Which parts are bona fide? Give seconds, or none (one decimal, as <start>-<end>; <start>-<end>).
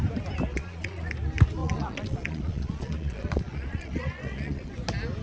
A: 0.0-0.5; 1.1-1.6; 4.7-5.2